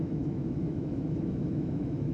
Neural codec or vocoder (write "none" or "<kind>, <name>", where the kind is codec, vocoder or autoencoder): autoencoder, DAC-VAE